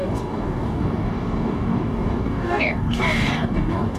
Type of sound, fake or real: fake